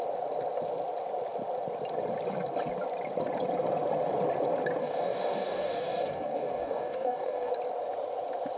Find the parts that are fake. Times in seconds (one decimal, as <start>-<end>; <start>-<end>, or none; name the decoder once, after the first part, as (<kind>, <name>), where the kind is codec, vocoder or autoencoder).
4.8-7.5 (codec, DAC)